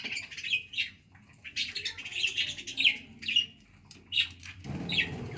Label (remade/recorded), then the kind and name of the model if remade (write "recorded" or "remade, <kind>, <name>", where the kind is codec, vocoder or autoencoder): recorded